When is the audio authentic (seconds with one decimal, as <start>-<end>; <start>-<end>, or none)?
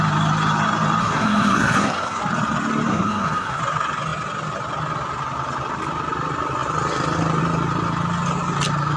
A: 0.0-1.0; 2.2-2.9; 3.6-9.0